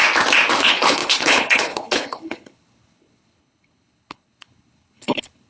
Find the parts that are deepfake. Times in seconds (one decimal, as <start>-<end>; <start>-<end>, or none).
0.6-5.5

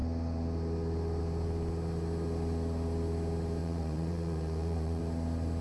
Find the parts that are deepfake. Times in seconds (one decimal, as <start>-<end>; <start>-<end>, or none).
3.6-5.0

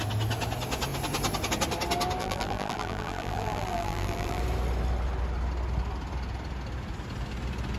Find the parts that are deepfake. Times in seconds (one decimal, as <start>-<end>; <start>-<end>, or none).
2.2-4.4

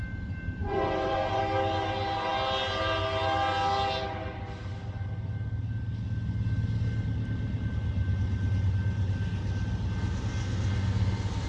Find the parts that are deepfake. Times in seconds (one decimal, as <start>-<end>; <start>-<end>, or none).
0.6-1.4

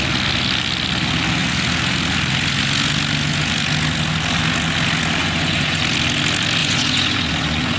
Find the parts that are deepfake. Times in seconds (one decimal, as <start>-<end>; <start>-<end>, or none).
5.2-5.8; 6.6-7.8

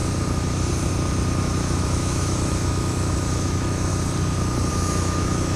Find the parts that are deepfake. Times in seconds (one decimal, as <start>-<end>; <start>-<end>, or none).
1.4-3.9; 4.7-5.6

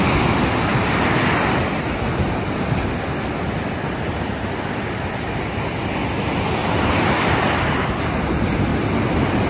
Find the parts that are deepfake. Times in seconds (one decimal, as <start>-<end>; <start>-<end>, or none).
0.7-5.2; 6.6-7.5; 8.7-9.5

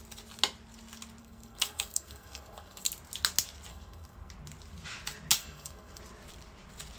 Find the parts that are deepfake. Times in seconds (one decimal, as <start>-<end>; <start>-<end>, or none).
1.2-2.9; 3.7-4.3; 5.4-6.0